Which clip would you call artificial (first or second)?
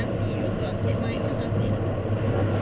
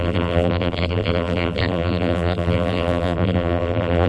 second